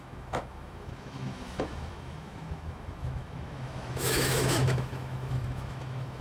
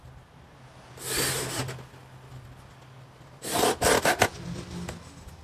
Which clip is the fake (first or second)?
first